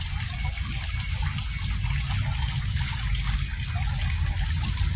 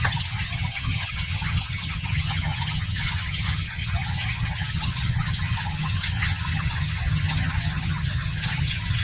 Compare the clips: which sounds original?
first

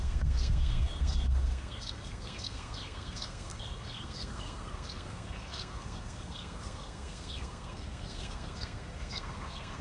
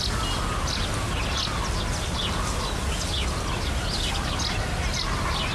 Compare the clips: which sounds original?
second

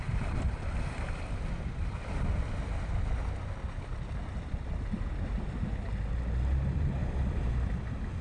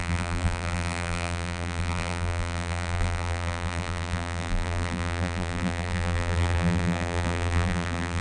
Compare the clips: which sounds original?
first